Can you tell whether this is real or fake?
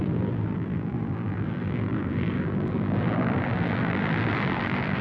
fake